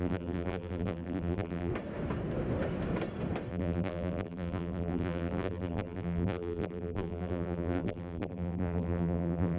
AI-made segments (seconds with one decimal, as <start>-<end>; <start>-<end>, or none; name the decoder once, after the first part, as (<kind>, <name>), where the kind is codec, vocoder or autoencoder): 0.0-1.7 (vocoder, BigVGAN v2); 3.5-9.6